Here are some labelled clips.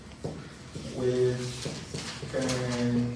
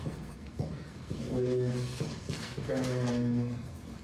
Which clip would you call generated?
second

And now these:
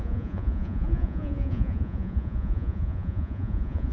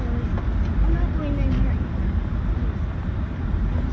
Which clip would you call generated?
first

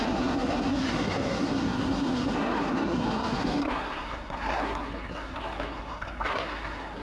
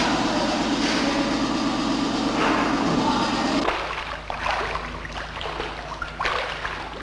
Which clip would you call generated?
first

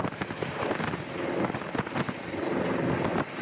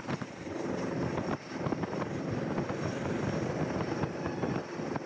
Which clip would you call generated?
second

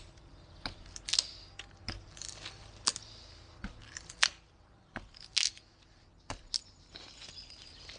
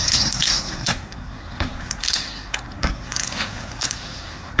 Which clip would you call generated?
second